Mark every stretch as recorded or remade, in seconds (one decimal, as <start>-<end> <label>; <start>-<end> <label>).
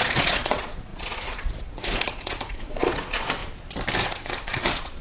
0.0-3.4 remade; 3.4-4.0 recorded; 4.0-5.0 remade